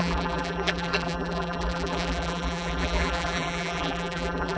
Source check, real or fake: fake